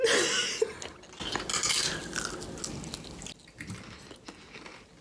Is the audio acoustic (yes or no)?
yes